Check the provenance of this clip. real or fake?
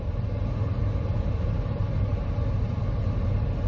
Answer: real